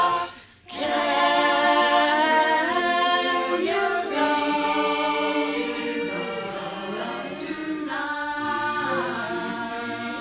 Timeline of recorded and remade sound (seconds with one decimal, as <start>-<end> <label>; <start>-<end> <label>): 0.0-0.8 recorded; 0.8-4.4 remade; 4.4-10.2 recorded